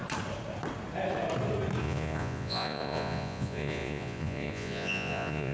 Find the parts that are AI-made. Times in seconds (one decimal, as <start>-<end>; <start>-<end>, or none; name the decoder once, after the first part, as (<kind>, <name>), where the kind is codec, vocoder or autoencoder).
1.8-5.5 (vocoder, Vocos)